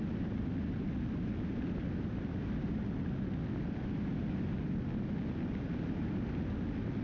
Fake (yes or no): no